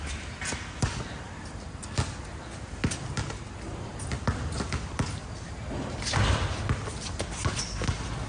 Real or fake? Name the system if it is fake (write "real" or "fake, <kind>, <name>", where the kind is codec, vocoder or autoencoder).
real